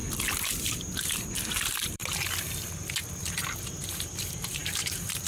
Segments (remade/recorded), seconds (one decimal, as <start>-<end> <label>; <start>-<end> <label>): 0.0-1.5 recorded; 1.5-2.0 remade; 2.0-4.0 recorded; 4.0-5.3 remade